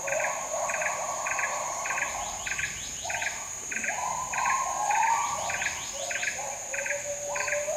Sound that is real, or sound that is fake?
real